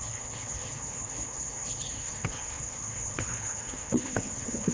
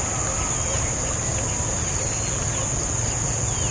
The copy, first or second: first